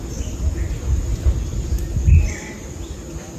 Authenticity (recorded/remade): recorded